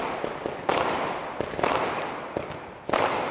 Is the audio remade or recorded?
recorded